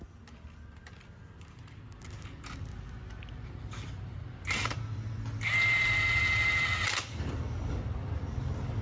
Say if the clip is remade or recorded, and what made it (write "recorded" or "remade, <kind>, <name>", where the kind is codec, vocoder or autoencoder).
recorded